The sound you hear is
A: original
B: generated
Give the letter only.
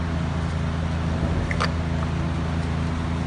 A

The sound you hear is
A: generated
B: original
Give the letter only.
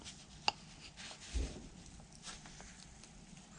B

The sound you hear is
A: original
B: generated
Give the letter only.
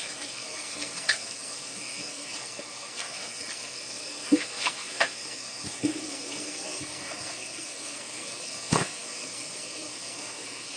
B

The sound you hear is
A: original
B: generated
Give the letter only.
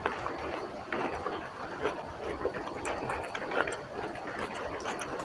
A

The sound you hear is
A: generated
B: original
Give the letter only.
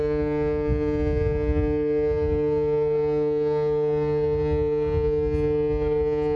B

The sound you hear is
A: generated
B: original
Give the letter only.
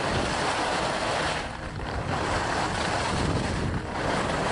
B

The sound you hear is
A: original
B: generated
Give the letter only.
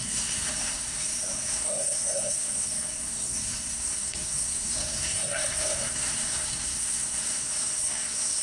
B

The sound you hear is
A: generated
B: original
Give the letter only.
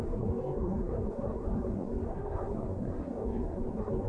A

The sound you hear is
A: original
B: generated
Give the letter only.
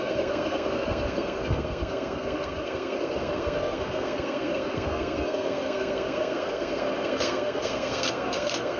B